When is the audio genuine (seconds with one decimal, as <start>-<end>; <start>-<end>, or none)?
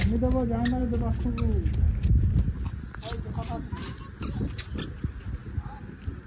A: 0.0-6.3